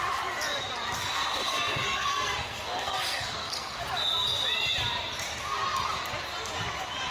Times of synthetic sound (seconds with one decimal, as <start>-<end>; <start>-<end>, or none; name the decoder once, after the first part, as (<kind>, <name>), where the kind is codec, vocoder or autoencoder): 1.0-3.8 (codec, SNAC)